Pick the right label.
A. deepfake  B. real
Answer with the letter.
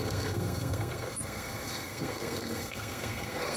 A